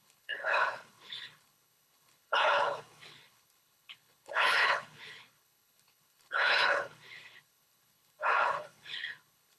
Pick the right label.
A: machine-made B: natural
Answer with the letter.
A